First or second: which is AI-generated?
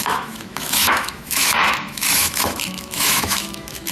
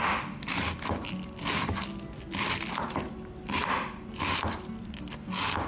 first